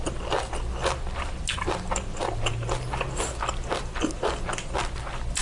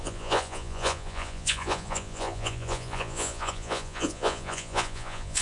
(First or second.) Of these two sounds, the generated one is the second